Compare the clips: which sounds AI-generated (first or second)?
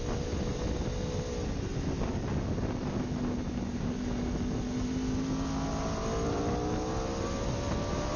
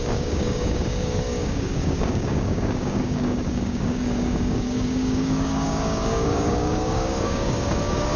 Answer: second